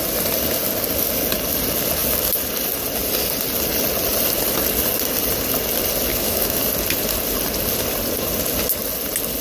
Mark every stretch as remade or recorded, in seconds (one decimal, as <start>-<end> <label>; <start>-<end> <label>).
0.0-6.1 recorded; 6.1-6.6 remade; 6.6-9.4 recorded